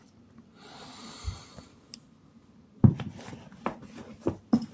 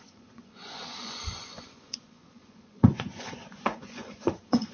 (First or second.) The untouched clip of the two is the first